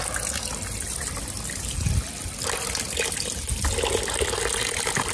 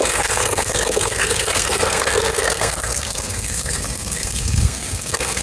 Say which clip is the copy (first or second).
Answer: second